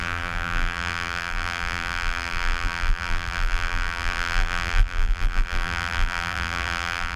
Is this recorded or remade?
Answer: remade